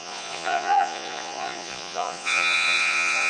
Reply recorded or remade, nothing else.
remade